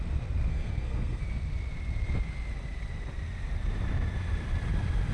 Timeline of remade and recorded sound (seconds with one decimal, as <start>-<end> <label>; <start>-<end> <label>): 0.0-0.5 recorded; 0.5-1.2 remade; 1.2-5.1 recorded